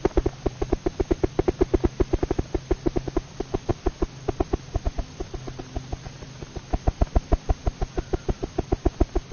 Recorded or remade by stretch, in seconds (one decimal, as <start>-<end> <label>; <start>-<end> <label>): 0.0-9.3 recorded